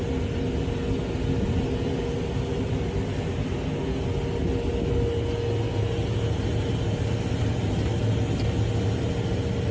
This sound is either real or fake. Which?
real